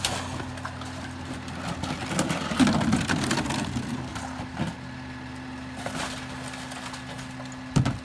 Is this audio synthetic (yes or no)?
no